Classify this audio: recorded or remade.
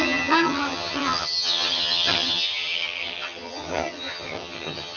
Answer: remade